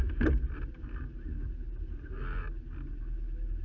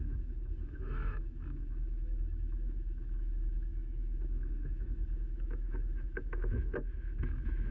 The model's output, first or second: second